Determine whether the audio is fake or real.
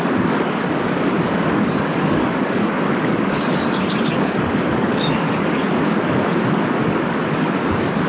fake